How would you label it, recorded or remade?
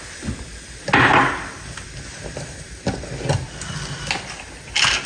recorded